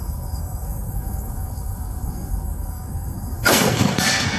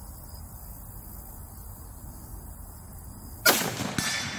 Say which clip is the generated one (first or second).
first